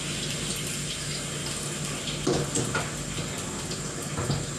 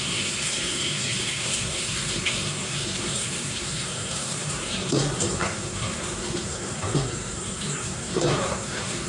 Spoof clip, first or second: second